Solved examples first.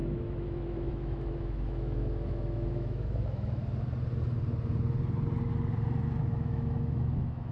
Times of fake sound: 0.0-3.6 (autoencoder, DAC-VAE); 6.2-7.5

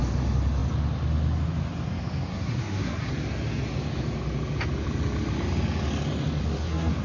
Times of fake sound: 2.3-3.1 (codec, SNAC); 6.4-7.0

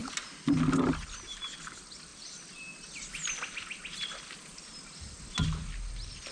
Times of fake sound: none

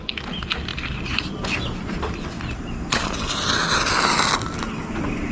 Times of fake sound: none

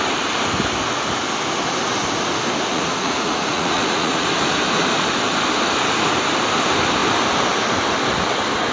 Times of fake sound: 2.7-4.3 (vocoder, Vocos)

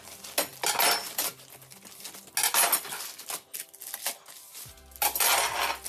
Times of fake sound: none

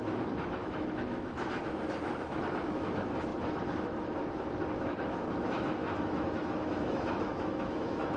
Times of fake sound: 0.0-8.2 (autoencoder, DAC-VAE)

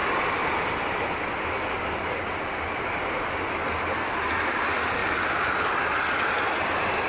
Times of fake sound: none